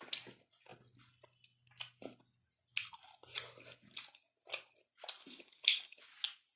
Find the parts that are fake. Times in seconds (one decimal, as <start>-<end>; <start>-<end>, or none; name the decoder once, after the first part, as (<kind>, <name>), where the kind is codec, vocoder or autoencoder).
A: 5.2-6.0 (codec, HILCodec)

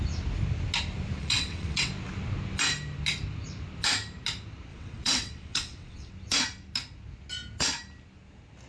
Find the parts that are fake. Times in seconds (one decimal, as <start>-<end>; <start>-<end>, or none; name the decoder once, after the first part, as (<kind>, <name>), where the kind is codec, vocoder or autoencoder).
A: 1.2-1.9 (vocoder, WaveNeXt); 4.7-6.1

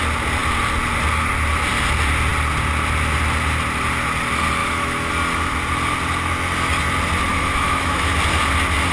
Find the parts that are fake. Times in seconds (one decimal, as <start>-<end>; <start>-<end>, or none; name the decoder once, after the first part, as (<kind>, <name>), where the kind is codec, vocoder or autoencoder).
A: 4.6-5.1 (autoencoder, DAC-VAE); 7.3-8.1

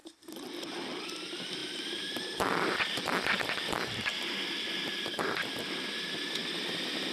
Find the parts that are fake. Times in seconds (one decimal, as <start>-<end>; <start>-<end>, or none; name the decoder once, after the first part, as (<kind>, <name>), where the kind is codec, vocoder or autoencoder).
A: 1.6-2.2 (vocoder, BigVGAN v2); 4.1-5.2

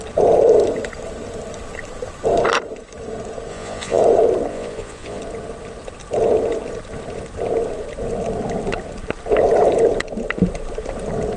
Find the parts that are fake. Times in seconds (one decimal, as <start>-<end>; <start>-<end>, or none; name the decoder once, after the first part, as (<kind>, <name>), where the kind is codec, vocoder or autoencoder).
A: 3.5-4.0 (vocoder, Vocos); 4.5-5.2

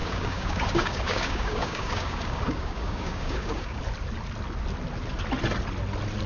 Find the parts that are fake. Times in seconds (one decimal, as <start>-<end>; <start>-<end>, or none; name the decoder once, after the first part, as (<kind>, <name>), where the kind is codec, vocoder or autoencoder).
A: 0.0-3.8 (codec, DAC)